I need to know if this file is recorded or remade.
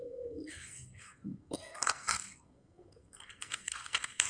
remade